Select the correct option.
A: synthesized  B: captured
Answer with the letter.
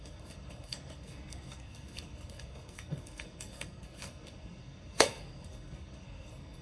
A